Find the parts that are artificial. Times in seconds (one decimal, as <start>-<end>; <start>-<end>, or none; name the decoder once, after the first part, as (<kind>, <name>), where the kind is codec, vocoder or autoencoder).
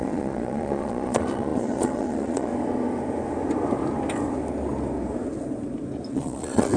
0.0-2.5 (vocoder, Vocos); 6.1-6.8